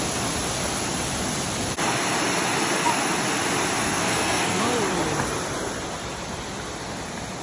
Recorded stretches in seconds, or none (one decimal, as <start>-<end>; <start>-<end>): 0.0-3.8; 4.6-7.4

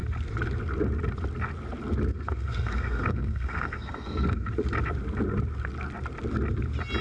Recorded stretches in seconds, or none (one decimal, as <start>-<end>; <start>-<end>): 0.0-2.1; 4.5-7.0

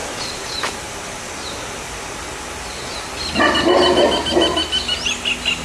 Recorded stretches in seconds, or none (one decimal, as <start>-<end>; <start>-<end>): 0.0-5.6

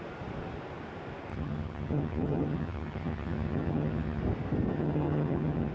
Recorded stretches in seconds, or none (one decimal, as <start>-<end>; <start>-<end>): 0.0-1.3; 4.2-4.7

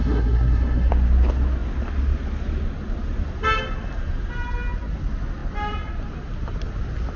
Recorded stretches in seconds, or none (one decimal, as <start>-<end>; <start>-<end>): 0.9-7.2